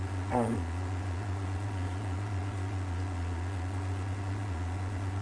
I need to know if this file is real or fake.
fake